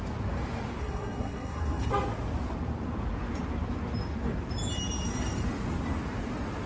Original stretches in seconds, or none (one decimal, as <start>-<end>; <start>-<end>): 0.0-0.8; 1.9-6.7